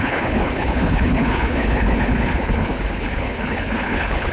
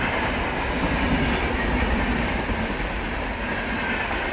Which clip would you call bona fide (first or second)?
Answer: second